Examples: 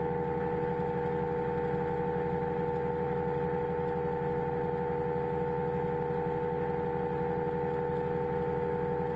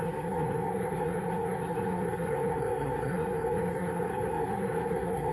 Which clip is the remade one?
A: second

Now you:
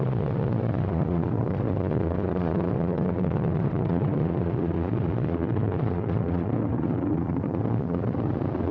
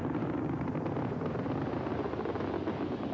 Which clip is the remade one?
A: first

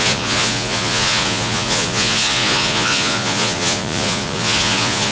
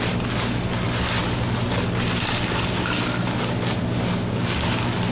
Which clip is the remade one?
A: first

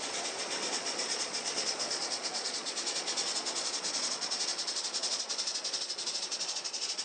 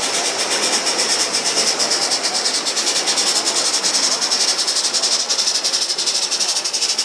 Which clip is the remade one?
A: first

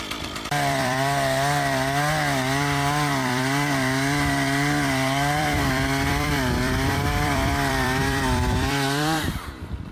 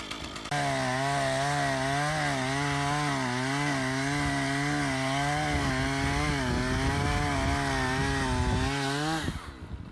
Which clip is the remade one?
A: first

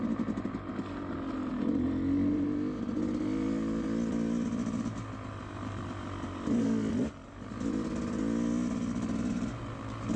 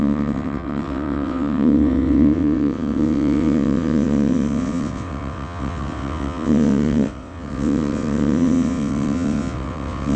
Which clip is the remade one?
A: second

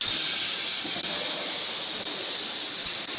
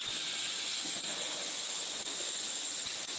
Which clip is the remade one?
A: second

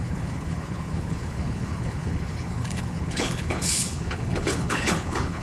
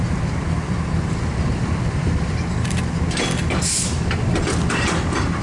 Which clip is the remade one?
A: first